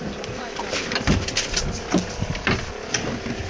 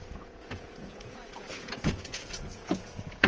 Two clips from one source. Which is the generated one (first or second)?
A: second